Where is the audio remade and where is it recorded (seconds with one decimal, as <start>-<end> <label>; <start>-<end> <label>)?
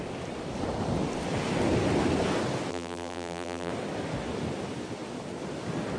0.0-2.7 recorded; 2.7-3.7 remade; 3.7-6.0 recorded